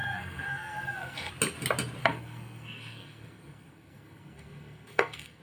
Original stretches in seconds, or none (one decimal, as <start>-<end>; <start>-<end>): 1.3-2.0